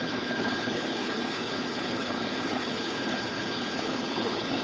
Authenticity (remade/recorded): remade